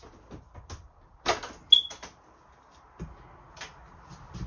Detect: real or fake real